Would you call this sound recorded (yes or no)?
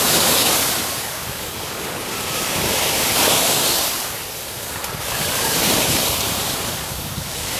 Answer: no